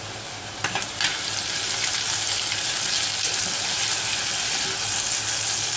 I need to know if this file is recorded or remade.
recorded